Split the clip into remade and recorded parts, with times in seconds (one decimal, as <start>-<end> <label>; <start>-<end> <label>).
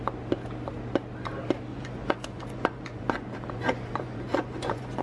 0.0-1.7 recorded; 1.7-5.0 remade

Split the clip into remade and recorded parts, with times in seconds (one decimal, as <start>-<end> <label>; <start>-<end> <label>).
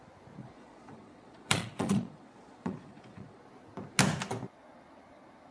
0.0-0.4 recorded; 0.4-3.4 remade; 3.4-5.5 recorded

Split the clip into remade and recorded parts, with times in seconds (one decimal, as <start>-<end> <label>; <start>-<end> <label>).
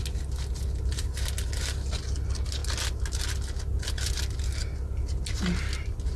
0.0-6.2 recorded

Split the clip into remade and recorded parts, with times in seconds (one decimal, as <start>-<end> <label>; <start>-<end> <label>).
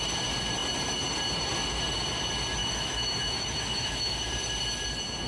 0.0-2.6 recorded; 2.6-4.3 remade; 4.3-5.3 recorded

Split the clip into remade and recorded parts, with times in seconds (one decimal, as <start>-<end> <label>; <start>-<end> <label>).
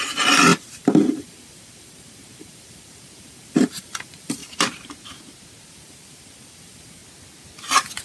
0.0-4.4 remade; 4.4-5.7 recorded; 5.7-7.0 remade; 7.0-8.0 recorded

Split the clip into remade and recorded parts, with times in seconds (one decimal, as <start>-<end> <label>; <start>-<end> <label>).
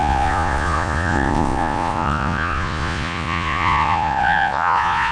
0.0-5.1 remade